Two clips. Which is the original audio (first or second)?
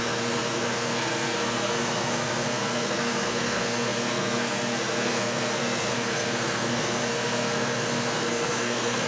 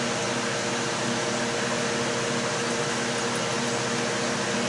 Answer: second